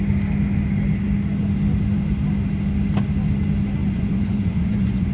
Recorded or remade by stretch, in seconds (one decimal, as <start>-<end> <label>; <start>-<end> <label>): 0.0-3.8 recorded; 3.8-5.1 remade